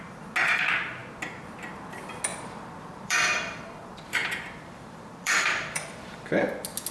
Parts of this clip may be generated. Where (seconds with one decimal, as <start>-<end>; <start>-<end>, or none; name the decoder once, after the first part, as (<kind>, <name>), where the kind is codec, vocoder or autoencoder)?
2.3-6.4 (vocoder, BigVGAN v2)